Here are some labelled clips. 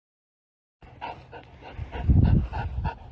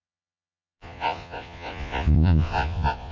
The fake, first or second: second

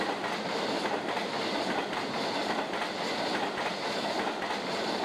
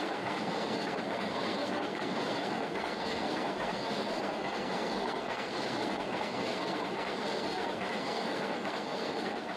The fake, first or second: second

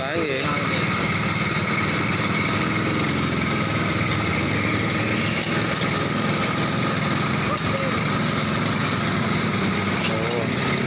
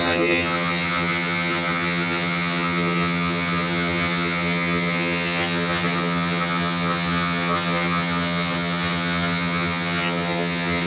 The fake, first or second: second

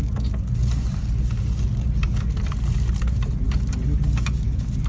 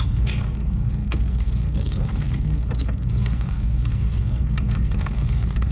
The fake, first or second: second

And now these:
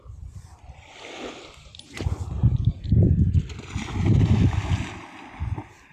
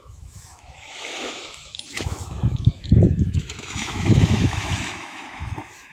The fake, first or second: second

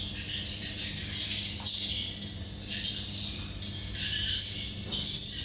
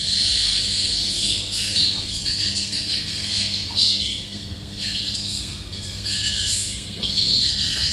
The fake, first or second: second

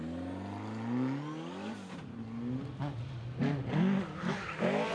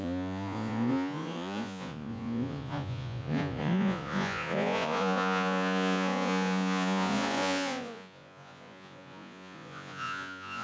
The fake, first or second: second